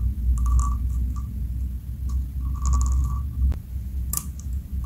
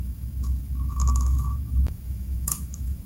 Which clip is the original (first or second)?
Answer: first